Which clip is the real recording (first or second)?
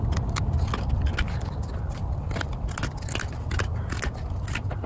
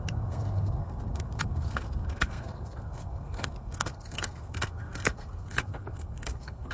first